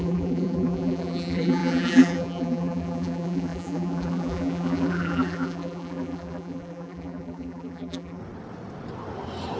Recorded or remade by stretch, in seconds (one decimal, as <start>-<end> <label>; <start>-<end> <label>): 0.0-8.2 remade; 8.2-9.6 recorded